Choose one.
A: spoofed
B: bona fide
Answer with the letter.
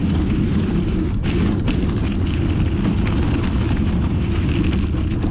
B